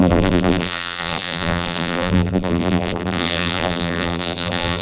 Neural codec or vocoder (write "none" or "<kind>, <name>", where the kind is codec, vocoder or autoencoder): vocoder, BigVGAN v2